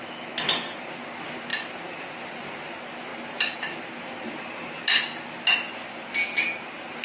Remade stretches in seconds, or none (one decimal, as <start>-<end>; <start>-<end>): none